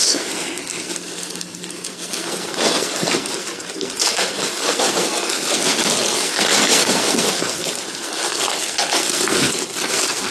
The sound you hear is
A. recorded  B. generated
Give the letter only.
B